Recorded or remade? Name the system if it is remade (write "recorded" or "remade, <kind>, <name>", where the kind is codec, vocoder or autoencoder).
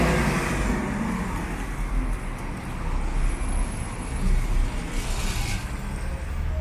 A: recorded